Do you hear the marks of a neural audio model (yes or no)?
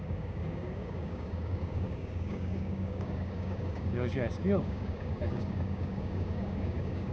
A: yes